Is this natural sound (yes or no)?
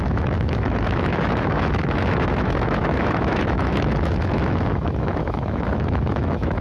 no